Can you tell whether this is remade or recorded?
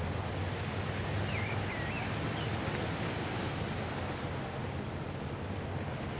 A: recorded